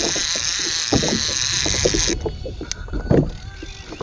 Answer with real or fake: real